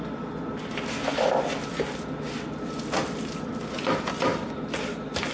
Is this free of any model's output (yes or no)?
yes